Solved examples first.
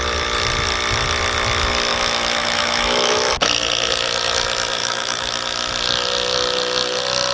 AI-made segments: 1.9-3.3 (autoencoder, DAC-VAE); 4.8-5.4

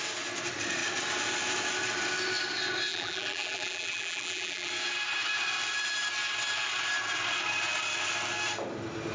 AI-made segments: 2.9-4.7 (vocoder, BigVGAN v2)

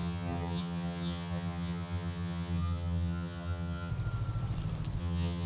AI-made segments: 0.0-3.9 (vocoder, HiFi-GAN); 5.0-5.5

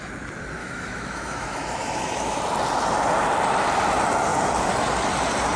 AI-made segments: 0.6-2.4 (autoencoder, DAC-VAE)

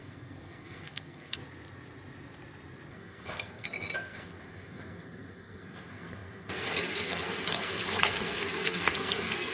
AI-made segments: 0.0-1.4 (codec, SNAC); 2.9-9.5

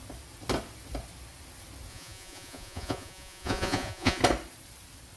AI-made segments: 1.9-4.2 (vocoder, Vocos)